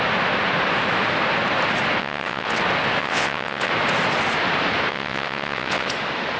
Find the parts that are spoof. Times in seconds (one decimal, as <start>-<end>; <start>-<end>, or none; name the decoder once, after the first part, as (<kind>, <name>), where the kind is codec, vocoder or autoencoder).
2.0-2.6 (vocoder, WaveNeXt); 3.0-3.7; 4.9-5.9